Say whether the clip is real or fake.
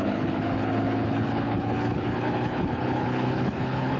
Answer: fake